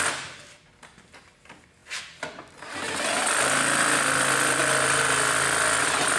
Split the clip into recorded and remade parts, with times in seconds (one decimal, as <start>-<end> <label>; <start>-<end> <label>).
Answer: 0.0-6.2 recorded